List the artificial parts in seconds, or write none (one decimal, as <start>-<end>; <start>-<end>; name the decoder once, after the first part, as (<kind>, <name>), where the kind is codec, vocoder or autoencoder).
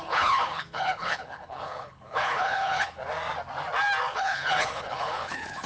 0.0-3.0 (codec, HILCodec); 4.1-5.7